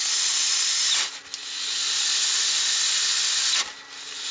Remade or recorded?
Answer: recorded